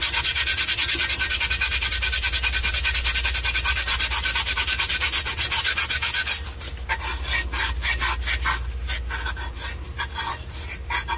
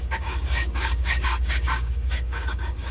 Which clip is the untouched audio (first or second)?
first